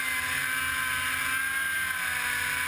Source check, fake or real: real